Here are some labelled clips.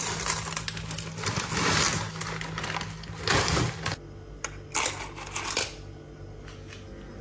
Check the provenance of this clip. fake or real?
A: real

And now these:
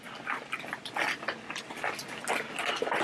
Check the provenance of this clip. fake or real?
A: real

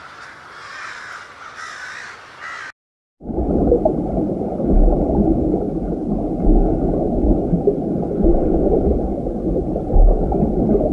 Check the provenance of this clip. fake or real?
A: real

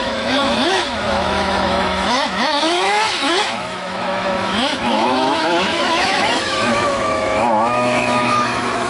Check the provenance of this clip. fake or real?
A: fake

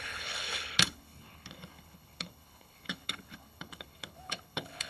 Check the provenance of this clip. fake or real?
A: fake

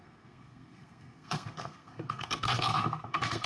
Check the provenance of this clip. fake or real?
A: fake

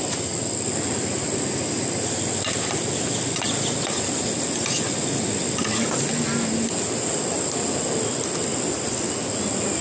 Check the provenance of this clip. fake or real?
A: real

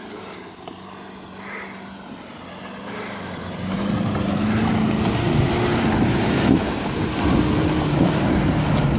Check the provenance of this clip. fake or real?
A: real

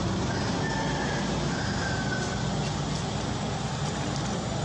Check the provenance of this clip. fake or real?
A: real